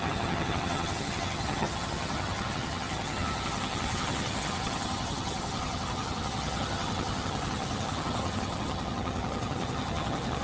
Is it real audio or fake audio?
fake